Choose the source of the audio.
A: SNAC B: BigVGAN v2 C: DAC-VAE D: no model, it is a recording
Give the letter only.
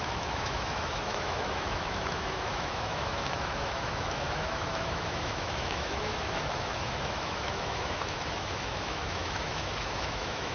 C